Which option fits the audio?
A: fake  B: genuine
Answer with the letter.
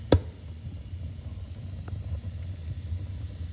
B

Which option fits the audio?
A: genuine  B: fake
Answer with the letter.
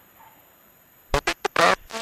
B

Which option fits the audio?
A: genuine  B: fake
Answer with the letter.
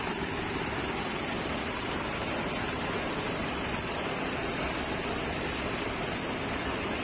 B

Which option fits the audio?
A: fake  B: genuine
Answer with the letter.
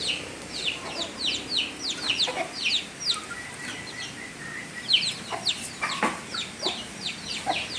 B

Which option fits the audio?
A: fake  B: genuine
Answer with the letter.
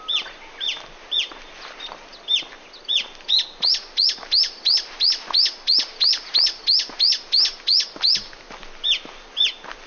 B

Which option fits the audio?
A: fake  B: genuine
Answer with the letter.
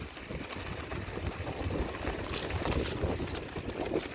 B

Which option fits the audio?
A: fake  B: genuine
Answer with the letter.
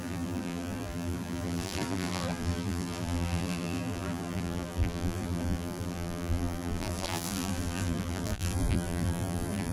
A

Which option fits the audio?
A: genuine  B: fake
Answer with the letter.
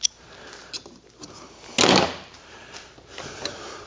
A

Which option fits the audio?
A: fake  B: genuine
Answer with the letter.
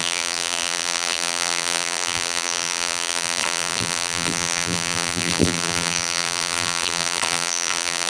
A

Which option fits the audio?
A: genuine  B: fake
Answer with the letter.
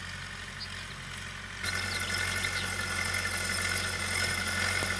A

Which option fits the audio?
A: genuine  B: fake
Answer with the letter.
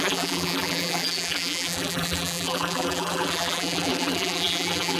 B